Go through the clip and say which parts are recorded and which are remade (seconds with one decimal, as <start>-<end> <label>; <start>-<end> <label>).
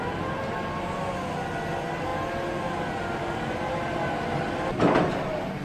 0.0-5.6 recorded